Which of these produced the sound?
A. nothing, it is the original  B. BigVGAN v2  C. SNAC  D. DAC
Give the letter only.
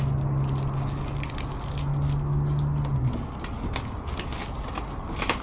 A